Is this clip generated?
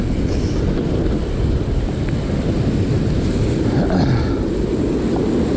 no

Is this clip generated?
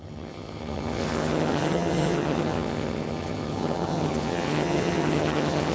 yes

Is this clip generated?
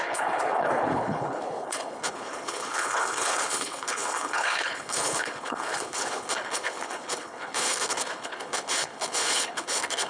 yes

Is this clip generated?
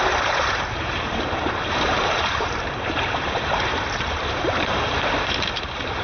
yes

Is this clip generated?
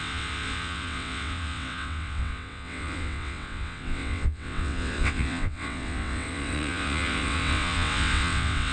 yes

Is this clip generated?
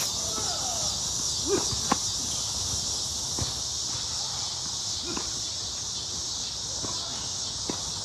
no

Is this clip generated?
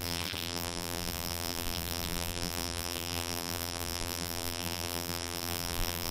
yes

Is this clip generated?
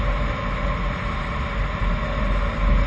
no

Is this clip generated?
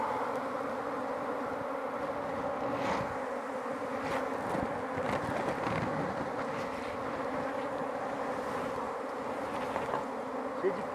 no